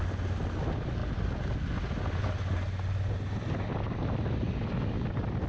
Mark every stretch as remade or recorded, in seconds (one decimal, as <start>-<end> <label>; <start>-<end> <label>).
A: 0.0-5.5 recorded